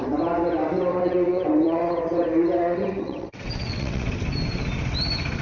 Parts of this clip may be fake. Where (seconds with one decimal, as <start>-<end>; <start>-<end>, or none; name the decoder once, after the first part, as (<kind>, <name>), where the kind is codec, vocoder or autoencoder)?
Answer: 0.9-2.0 (vocoder, WaveNeXt); 2.6-4.1